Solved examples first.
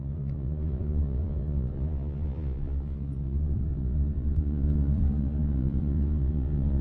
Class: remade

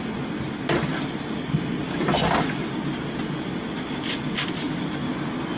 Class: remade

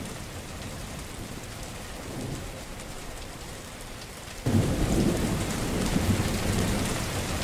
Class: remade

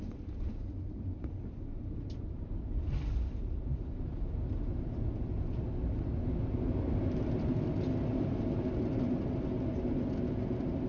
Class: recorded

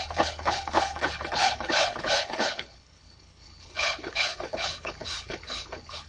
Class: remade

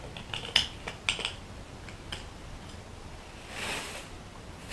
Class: recorded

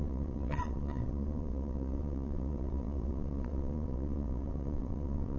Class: remade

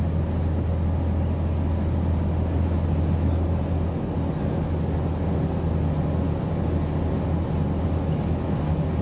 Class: recorded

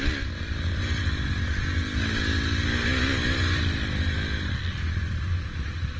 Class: recorded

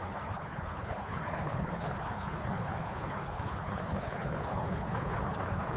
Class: remade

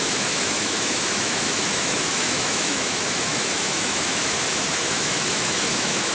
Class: remade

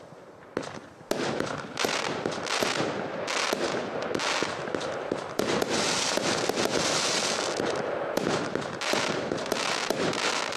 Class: recorded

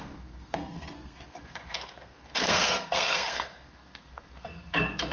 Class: remade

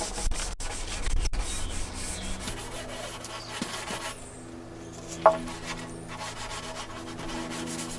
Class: recorded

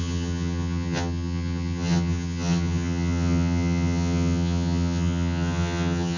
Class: remade